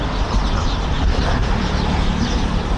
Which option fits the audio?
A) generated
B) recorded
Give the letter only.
B